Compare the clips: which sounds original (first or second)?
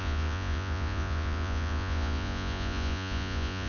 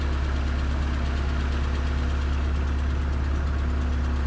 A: second